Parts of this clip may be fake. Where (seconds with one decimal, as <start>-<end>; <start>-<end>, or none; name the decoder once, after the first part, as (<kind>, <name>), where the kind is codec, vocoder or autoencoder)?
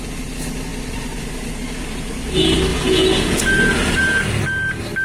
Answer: 2.7-3.4 (vocoder, Vocos)